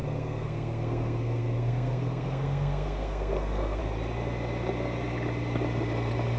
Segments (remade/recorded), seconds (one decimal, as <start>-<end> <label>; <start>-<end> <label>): 0.0-3.8 remade; 3.8-6.4 recorded